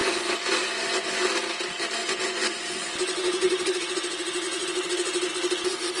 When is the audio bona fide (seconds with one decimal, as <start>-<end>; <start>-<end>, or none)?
1.2-2.0; 5.3-6.0